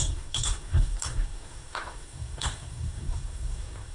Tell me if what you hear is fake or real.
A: fake